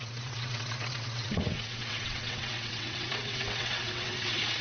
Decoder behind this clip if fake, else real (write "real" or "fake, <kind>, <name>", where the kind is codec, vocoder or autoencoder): fake, vocoder, WaveNeXt